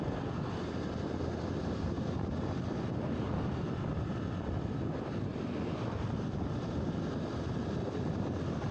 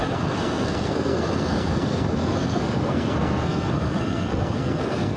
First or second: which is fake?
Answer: second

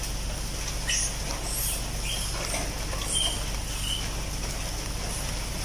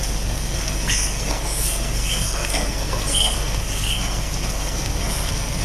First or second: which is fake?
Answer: second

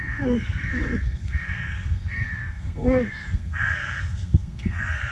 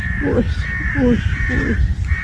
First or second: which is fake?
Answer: first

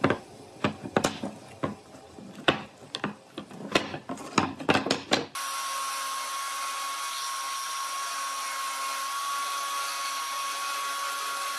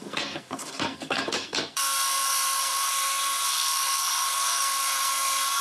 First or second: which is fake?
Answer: second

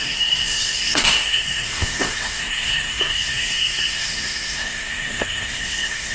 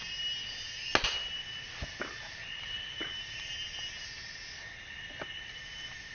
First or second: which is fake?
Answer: first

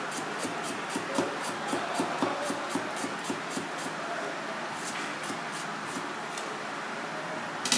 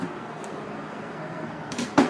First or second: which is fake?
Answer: second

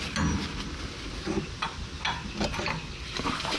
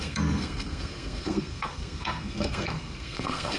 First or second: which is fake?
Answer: second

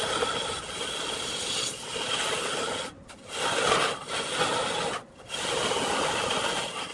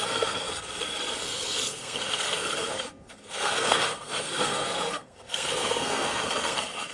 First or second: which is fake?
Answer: second